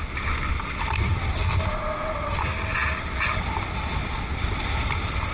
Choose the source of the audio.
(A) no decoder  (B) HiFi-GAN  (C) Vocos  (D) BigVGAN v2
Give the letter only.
A